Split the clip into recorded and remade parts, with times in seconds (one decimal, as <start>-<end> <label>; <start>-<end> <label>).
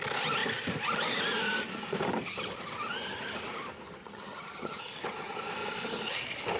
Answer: 0.0-4.0 recorded; 4.0-4.8 remade; 4.8-6.6 recorded